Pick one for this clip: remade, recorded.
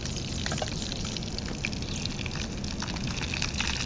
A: recorded